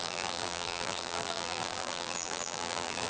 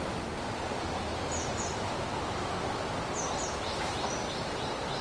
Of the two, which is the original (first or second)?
second